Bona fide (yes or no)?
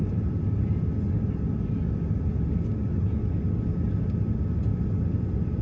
yes